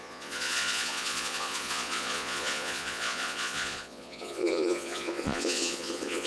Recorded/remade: remade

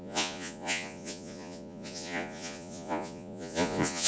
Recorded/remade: remade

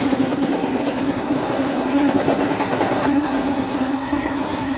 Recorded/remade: remade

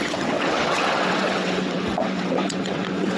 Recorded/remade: remade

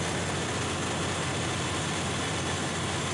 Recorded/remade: recorded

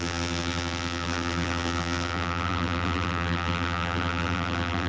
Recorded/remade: remade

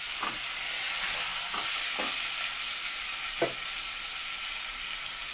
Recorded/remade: recorded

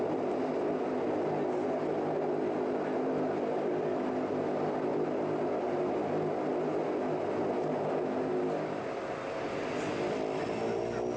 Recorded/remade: recorded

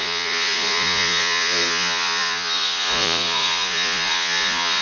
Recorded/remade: remade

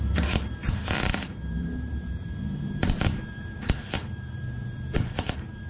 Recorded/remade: remade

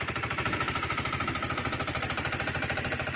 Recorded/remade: remade